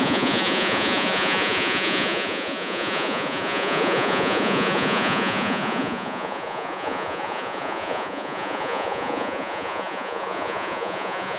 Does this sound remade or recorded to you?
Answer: remade